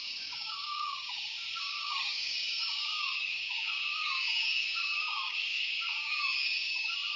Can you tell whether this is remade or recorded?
remade